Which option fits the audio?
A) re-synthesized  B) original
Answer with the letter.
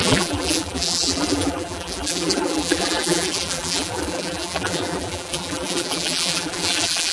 A